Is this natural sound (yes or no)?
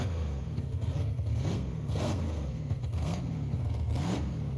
no